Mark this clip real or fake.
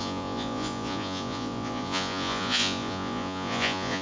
fake